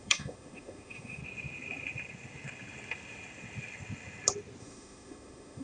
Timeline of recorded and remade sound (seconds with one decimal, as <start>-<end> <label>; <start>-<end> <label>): 0.0-1.2 remade; 1.2-4.6 recorded; 4.6-5.6 remade